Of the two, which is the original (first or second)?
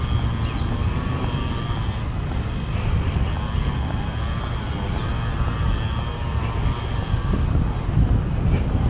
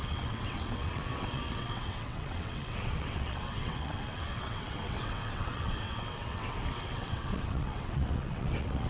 first